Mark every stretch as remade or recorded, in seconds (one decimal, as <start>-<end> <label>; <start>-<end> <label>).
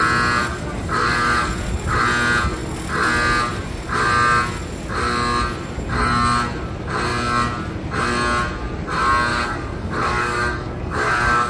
0.0-0.5 recorded; 0.5-1.5 remade; 1.5-9.3 recorded; 9.3-11.5 remade